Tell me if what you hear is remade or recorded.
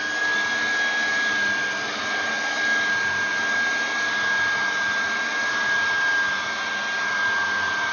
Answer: recorded